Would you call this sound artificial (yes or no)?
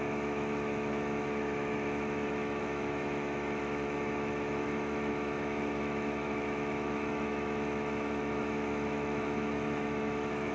yes